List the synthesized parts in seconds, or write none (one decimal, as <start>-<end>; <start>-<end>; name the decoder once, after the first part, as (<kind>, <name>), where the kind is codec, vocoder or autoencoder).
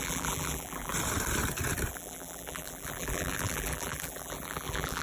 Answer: 0.0-0.9 (vocoder, BigVGAN v2); 1.9-5.0